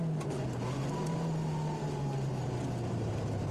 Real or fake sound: real